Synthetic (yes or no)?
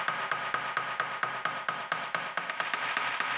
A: no